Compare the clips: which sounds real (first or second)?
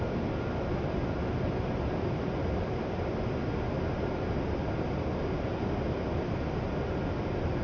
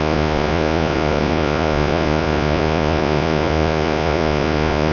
first